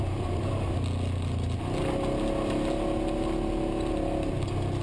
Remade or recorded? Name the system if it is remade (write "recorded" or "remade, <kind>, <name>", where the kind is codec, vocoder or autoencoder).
recorded